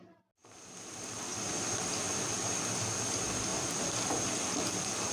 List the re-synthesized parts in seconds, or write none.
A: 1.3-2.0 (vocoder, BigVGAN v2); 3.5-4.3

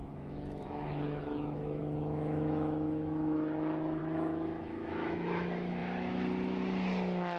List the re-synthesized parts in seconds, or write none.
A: 0.0-5.8 (autoencoder, DAC-VAE)